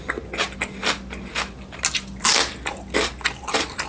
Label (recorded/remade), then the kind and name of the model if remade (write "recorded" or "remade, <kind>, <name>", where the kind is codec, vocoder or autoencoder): recorded